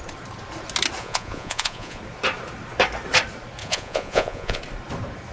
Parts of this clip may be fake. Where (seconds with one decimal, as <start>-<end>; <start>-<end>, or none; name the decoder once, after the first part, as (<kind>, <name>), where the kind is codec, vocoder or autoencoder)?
1.0-2.0 (vocoder, Vocos); 3.6-4.6